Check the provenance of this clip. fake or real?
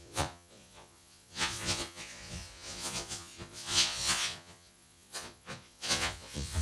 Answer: fake